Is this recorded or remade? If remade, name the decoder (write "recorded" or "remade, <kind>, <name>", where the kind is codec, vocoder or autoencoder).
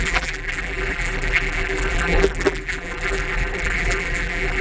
remade, vocoder, BigVGAN v2